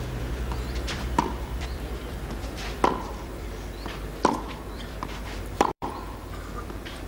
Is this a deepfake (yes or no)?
yes